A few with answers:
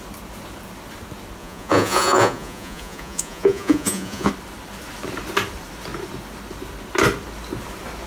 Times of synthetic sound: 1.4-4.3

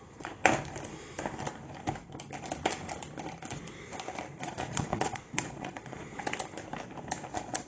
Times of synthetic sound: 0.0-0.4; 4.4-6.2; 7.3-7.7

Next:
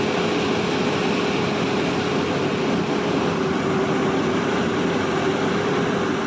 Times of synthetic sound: none